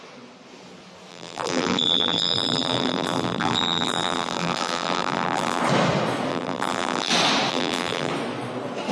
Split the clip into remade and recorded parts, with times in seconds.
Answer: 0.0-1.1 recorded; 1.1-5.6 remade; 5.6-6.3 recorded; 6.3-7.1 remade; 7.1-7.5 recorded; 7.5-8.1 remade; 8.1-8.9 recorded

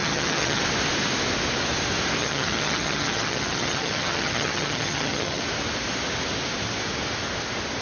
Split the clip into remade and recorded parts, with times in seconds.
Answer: 0.0-0.6 remade; 0.6-2.2 recorded; 2.2-5.4 remade; 5.4-7.8 recorded

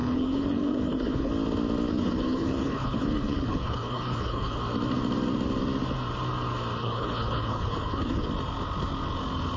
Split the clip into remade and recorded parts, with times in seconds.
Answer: 0.0-1.3 remade; 1.3-1.9 recorded; 1.9-4.6 remade; 4.6-6.8 recorded; 6.8-8.3 remade; 8.3-9.6 recorded

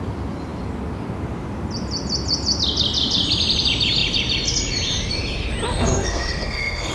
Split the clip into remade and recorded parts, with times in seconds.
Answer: 0.0-5.7 recorded; 5.7-6.9 remade